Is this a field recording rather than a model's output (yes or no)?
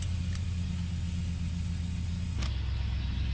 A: yes